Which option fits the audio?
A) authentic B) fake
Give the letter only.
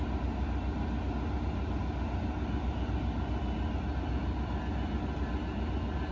A